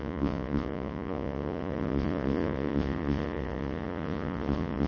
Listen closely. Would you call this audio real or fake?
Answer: fake